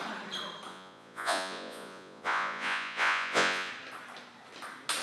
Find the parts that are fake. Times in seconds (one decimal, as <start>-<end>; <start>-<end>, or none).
0.7-3.7